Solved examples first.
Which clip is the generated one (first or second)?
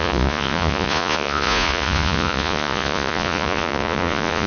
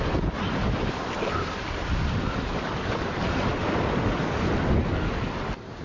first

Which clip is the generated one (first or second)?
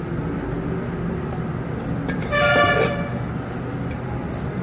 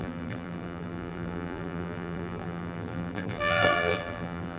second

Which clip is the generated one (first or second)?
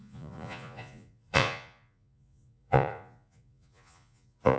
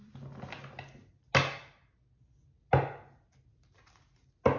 first